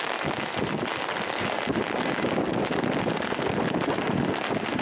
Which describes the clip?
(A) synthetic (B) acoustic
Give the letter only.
B